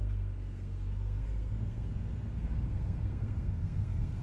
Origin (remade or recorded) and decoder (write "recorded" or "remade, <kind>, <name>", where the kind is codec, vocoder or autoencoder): remade, codec, SNAC